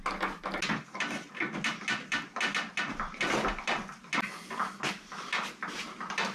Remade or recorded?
recorded